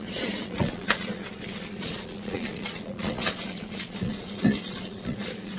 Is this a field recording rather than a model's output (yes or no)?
no